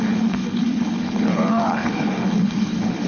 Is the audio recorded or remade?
remade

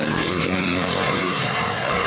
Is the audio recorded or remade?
remade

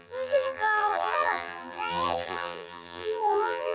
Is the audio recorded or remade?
remade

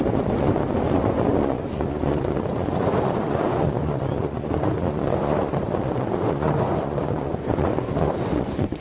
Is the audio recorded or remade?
remade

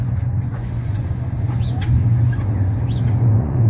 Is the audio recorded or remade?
remade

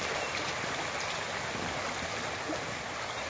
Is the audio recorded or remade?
recorded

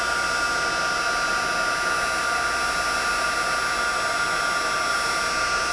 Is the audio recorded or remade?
recorded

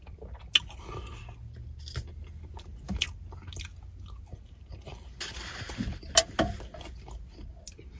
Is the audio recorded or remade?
recorded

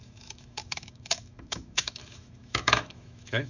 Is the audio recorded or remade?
remade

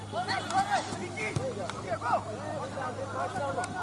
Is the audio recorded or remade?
recorded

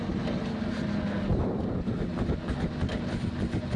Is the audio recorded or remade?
recorded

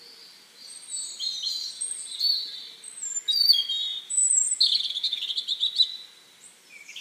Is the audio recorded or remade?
recorded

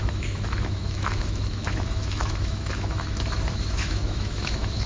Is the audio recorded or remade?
remade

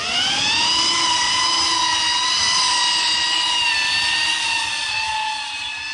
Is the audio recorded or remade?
recorded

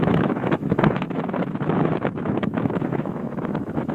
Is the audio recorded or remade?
remade